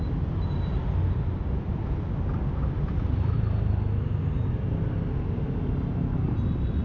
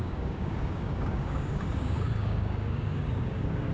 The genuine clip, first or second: first